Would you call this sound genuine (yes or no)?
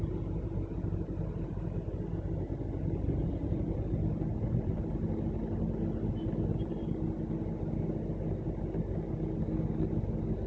yes